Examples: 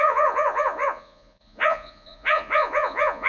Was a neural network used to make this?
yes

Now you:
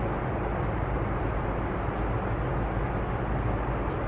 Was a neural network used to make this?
no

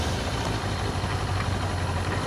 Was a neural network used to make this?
no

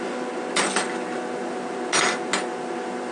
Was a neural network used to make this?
no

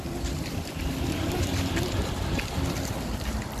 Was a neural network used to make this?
yes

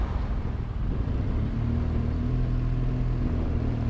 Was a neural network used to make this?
no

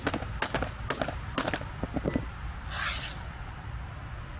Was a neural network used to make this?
no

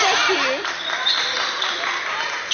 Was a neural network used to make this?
yes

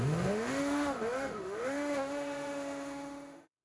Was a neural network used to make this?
yes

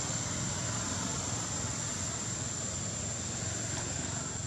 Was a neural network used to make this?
no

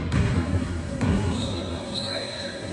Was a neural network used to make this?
yes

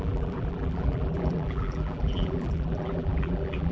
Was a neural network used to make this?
yes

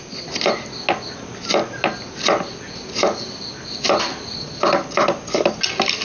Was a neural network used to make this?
no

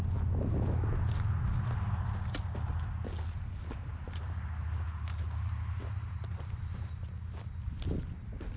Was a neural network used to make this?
no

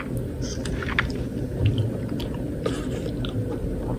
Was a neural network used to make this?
no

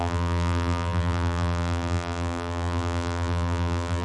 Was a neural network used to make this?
yes